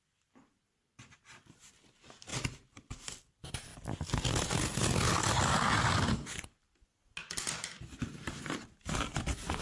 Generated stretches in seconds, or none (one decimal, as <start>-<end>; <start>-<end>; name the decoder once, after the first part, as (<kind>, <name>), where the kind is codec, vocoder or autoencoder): none